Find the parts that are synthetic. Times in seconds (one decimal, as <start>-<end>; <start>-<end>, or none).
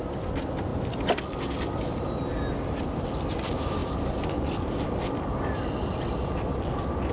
none